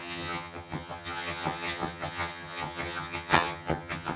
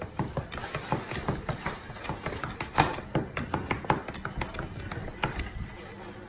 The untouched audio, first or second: second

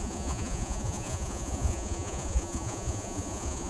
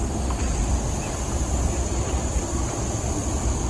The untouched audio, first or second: second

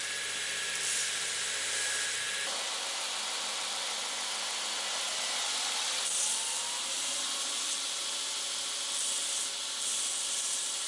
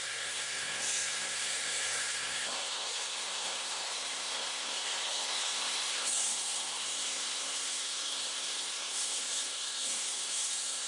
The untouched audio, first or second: first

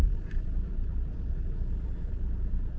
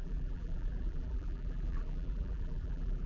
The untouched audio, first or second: first